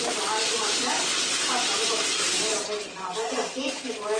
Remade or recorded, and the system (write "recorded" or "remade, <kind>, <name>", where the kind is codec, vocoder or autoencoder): recorded